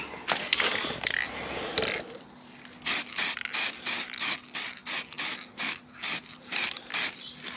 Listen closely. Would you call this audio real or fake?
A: real